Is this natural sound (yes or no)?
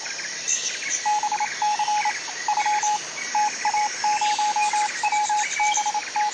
yes